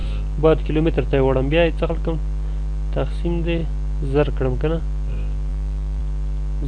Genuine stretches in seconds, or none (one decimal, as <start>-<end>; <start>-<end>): 0.0-5.5; 6.0-6.7